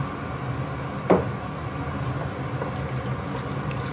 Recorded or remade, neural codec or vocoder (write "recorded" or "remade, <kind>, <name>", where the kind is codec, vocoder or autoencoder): recorded